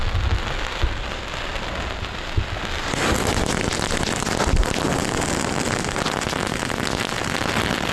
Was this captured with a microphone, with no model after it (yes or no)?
yes